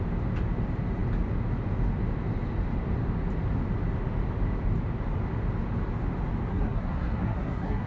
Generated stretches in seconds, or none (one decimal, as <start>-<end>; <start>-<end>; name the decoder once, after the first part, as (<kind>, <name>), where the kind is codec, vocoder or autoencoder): 6.5-7.9 (codec, SNAC)